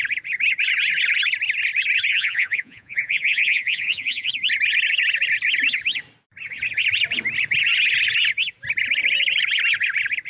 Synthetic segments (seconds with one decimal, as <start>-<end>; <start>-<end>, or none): 2.1-4.3